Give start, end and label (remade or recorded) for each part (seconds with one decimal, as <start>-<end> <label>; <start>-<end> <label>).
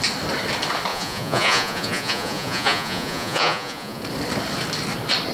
0.0-0.9 recorded; 0.9-4.0 remade; 4.0-5.3 recorded